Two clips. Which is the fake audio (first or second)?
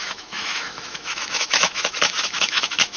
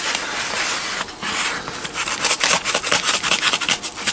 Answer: first